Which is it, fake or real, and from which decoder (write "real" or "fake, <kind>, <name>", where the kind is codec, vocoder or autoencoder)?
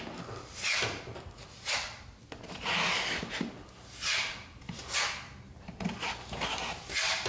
real